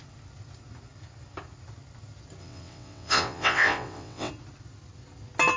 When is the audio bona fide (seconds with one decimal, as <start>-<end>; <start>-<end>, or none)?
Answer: 0.0-2.4; 4.3-5.6